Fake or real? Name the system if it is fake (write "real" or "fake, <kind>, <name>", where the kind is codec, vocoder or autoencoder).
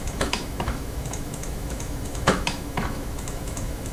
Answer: fake, autoencoder, DAC-VAE